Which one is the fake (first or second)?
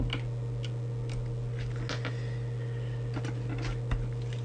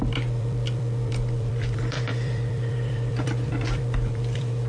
second